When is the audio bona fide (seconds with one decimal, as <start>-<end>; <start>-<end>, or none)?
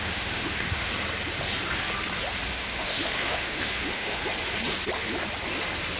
0.9-2.5; 4.2-6.0